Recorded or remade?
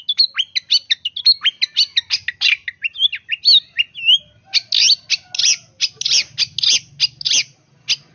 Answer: recorded